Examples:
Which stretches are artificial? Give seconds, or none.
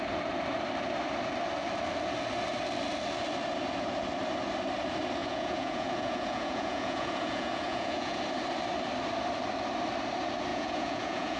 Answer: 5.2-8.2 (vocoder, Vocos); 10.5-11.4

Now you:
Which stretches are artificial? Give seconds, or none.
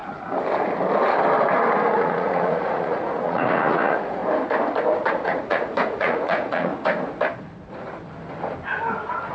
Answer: 1.9-4.2 (vocoder, Vocos); 5.1-6.7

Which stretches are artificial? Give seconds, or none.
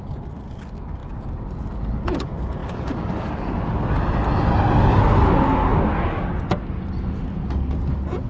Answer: none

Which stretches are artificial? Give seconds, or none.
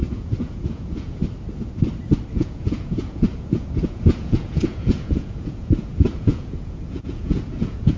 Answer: 0.0-1.2 (vocoder, Vocos); 2.3-8.0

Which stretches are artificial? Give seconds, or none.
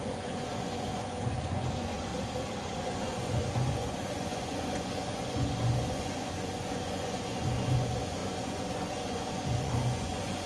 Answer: 0.0-2.1 (vocoder, Vocos); 2.6-10.5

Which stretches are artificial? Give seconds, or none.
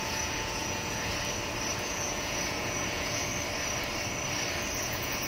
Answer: 0.0-1.1 (vocoder, Vocos); 1.8-3.3; 4.8-5.3